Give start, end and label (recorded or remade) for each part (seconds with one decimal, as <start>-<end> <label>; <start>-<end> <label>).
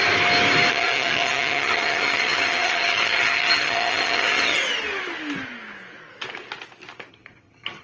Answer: 0.0-0.7 recorded; 0.7-4.6 remade; 4.6-7.1 recorded; 7.1-7.8 remade